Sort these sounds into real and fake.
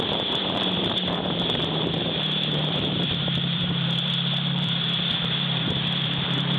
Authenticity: fake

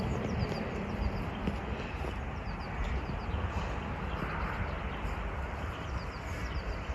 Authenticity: real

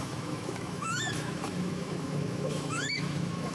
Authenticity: fake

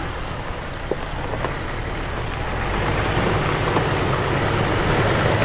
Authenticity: real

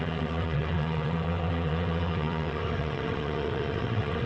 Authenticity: fake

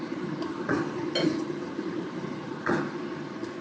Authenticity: real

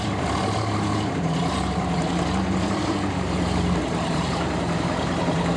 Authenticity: fake